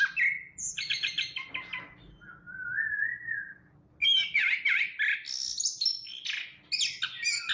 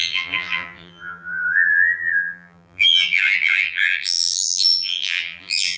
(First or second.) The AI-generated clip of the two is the second